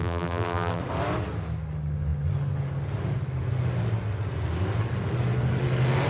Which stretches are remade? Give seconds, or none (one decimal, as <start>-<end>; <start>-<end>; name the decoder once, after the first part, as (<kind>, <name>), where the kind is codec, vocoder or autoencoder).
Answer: 0.0-0.8 (vocoder, BigVGAN v2)